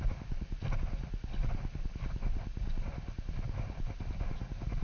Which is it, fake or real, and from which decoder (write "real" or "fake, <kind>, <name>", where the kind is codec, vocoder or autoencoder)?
real